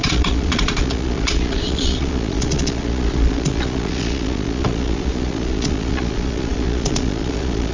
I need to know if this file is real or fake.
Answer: fake